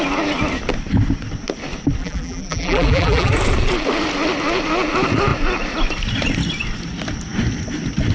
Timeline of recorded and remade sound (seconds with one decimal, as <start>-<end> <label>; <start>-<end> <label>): 0.0-2.0 recorded; 2.0-3.3 remade; 3.3-8.1 recorded